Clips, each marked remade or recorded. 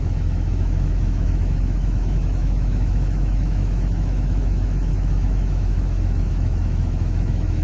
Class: remade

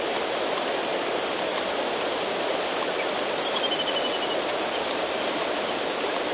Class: recorded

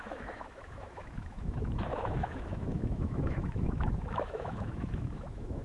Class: remade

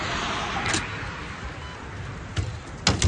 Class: recorded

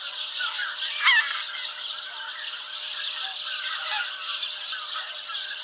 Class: recorded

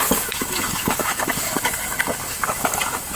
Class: remade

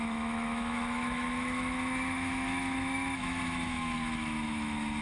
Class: remade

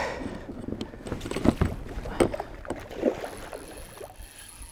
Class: recorded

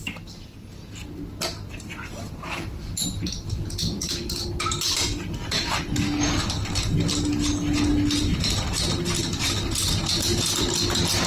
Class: recorded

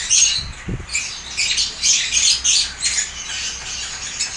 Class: recorded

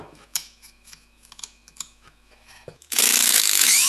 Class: remade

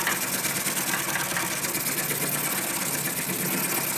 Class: recorded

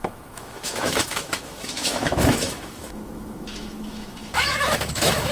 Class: remade